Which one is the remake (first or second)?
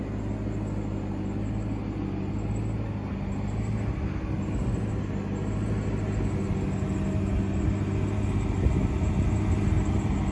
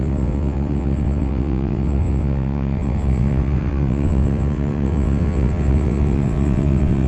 second